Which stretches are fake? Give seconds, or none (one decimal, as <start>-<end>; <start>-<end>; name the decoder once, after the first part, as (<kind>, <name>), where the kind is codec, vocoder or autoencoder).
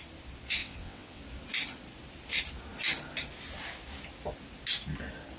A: 0.6-1.2 (vocoder, WaveNeXt)